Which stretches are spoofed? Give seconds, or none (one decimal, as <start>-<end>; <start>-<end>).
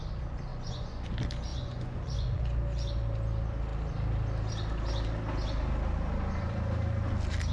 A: 0.5-1.1; 1.5-2.4